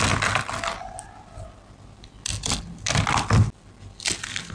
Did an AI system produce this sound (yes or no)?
no